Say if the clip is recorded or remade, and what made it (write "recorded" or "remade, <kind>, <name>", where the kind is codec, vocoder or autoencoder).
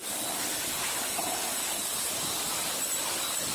recorded